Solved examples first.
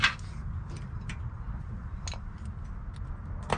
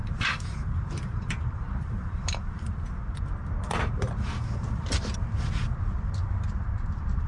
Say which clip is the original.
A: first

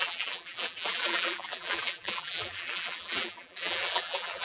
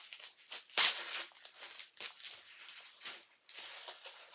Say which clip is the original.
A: second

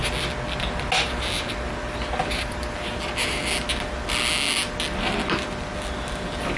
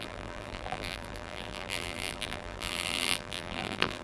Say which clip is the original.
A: first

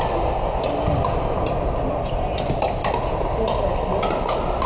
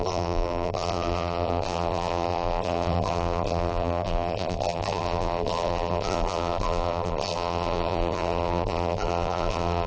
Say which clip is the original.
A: first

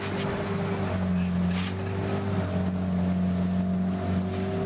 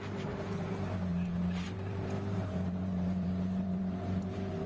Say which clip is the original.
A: first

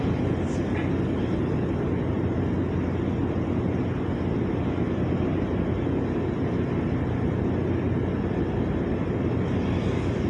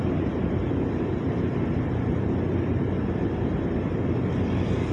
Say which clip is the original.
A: first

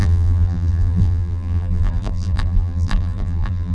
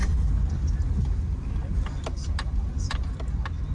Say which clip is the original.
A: second